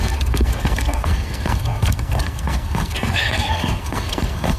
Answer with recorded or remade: remade